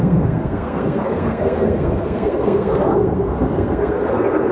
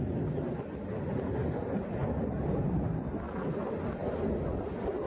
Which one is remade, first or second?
first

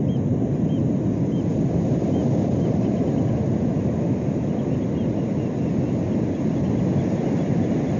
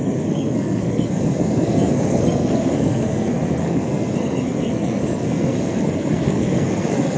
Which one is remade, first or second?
second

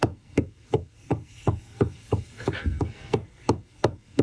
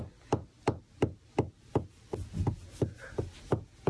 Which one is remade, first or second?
first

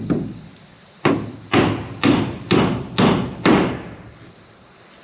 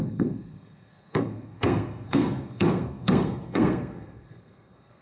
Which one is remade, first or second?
second